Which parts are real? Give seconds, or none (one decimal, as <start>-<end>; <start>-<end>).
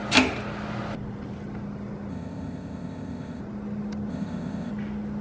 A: 0.0-2.1; 3.4-4.1; 4.7-5.2